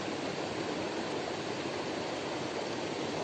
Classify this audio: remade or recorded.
recorded